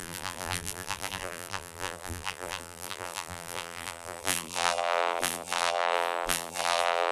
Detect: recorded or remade remade